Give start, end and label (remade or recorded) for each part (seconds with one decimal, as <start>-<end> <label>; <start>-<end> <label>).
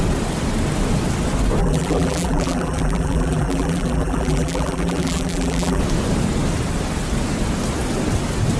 0.0-1.6 recorded; 1.6-5.8 remade; 5.8-8.6 recorded